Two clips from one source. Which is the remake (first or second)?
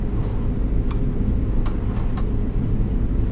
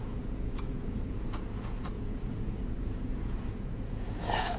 second